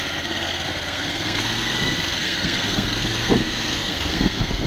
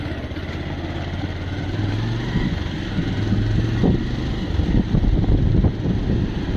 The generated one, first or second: first